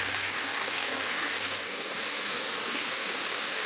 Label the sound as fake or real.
fake